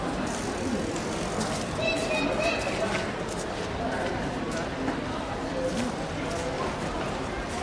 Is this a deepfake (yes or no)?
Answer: no